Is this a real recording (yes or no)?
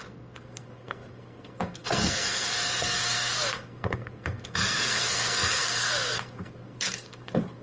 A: no